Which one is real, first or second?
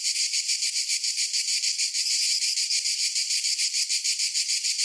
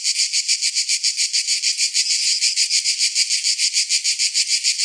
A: second